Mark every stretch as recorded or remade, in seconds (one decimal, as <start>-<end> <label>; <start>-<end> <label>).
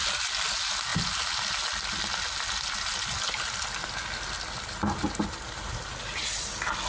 0.0-6.9 recorded